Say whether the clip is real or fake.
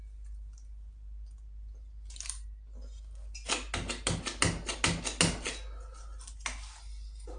real